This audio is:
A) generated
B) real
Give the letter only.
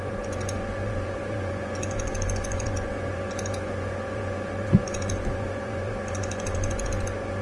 A